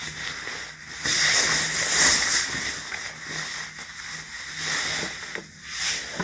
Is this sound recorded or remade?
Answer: recorded